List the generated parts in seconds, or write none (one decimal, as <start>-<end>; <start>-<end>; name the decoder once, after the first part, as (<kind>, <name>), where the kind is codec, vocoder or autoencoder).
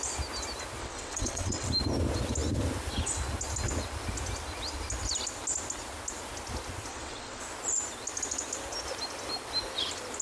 0.8-1.7 (vocoder, WaveNeXt); 6.9-7.4